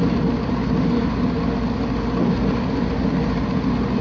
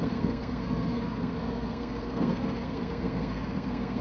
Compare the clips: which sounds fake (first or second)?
second